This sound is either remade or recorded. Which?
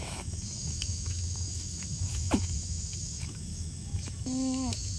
remade